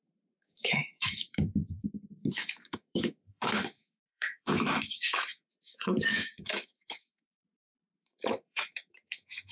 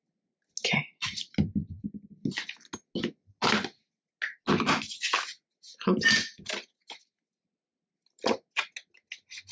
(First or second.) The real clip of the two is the second